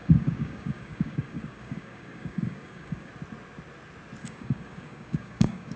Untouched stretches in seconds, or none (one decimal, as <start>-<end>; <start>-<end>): 3.1-4.2